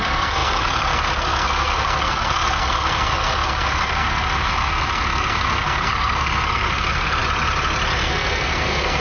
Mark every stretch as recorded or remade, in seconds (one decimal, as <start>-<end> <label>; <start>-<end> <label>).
0.0-7.2 remade; 7.2-8.0 recorded; 8.0-9.0 remade